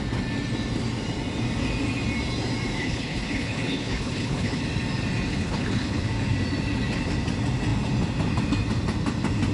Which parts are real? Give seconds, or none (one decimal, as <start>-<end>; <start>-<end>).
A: 0.0-2.8; 4.6-5.3; 6.0-9.5